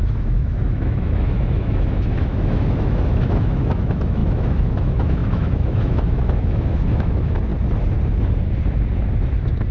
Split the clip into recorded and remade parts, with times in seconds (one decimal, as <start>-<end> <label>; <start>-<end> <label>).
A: 0.0-7.5 remade; 7.5-9.7 recorded